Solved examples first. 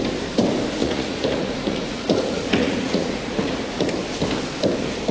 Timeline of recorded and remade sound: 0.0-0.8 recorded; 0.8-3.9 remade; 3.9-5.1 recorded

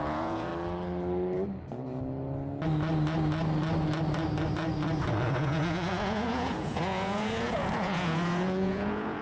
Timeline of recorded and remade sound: 0.0-0.5 remade; 0.5-5.3 recorded; 5.3-9.2 remade

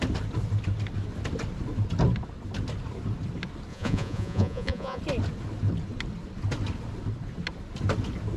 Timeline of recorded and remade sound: 0.0-3.7 recorded; 3.7-5.0 remade; 5.0-8.4 recorded

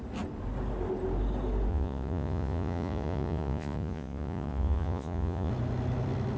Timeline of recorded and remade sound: 0.0-1.7 recorded; 1.7-5.5 remade; 5.5-6.4 recorded

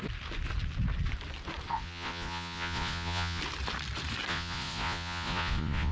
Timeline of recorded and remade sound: 0.0-1.7 recorded; 1.7-3.4 remade; 3.4-4.3 recorded; 4.3-5.9 remade

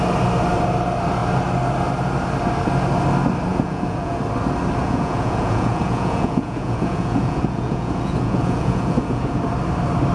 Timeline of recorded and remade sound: 0.0-3.5 recorded; 3.5-4.2 remade; 4.2-4.8 recorded; 4.8-9.4 remade; 9.4-10.1 recorded

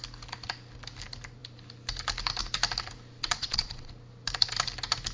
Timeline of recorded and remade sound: 0.0-3.2 recorded; 3.2-3.9 remade; 3.9-5.1 recorded